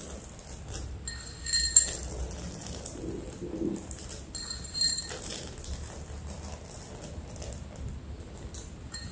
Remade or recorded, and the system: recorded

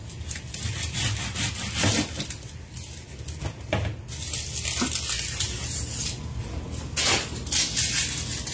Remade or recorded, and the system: recorded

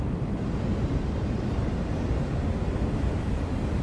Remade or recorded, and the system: recorded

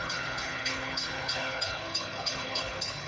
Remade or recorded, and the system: remade, codec, HILCodec